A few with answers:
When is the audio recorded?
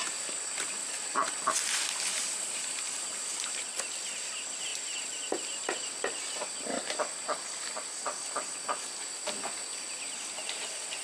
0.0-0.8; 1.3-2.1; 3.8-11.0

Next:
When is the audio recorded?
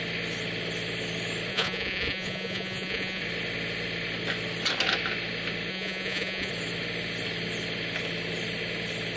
0.0-1.5; 3.2-5.7; 6.5-9.2